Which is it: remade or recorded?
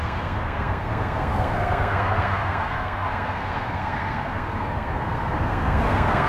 remade